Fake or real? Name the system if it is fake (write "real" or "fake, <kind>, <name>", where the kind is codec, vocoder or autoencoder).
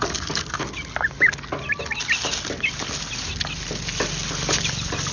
real